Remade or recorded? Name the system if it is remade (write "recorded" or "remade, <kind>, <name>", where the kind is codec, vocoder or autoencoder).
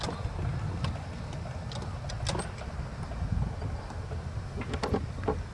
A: recorded